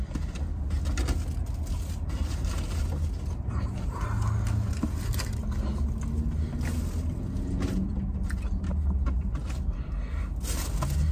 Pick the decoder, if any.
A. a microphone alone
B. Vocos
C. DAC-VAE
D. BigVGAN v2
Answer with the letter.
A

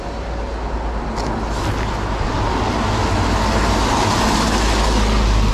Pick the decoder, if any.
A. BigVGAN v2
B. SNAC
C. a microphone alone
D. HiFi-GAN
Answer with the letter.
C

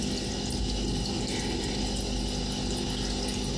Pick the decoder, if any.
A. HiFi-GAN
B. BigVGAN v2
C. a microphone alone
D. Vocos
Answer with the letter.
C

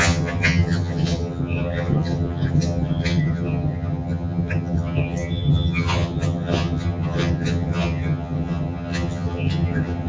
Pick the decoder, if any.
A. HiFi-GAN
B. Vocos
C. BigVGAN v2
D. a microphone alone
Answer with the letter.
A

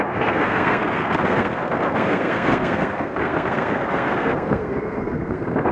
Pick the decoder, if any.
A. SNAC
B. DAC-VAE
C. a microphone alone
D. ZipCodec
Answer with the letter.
A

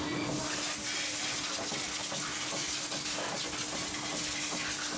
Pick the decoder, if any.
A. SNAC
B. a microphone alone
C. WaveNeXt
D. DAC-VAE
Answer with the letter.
B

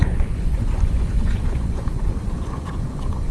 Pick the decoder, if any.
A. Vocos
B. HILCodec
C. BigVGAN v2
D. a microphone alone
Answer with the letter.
A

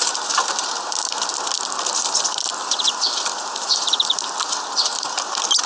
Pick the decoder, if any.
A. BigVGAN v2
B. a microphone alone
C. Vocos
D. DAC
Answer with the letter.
A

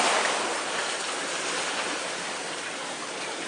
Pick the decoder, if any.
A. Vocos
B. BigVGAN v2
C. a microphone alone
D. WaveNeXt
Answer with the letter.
C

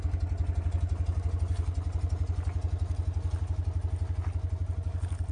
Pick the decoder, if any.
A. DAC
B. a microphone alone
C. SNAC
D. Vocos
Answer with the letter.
B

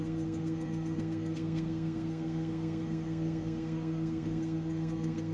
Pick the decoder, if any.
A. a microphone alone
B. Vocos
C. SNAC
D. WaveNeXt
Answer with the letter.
C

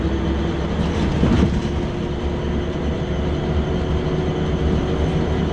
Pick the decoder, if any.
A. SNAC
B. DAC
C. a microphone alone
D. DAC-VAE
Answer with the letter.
C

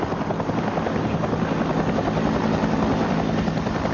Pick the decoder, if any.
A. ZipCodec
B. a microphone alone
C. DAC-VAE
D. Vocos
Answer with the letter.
B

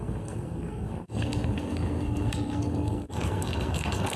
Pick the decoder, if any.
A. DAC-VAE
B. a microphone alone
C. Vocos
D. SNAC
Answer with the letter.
D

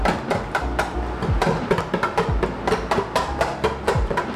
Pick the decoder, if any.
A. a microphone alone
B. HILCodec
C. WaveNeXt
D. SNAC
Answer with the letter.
A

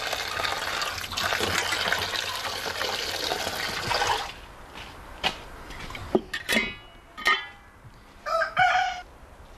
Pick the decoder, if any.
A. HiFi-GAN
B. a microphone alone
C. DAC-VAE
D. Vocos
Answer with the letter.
B